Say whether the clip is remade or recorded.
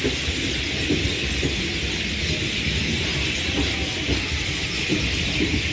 recorded